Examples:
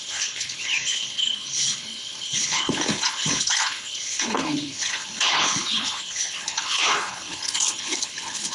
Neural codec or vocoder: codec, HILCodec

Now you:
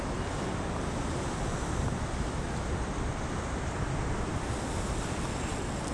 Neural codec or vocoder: none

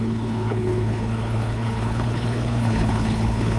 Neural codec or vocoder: codec, HILCodec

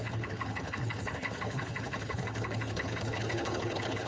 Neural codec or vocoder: codec, HILCodec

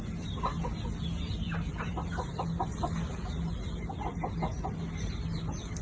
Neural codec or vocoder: none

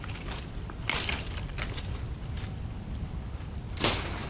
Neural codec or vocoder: none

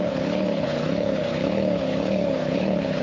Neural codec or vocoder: codec, HILCodec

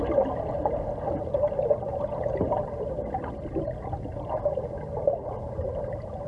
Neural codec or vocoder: none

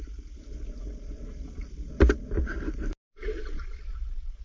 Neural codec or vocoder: none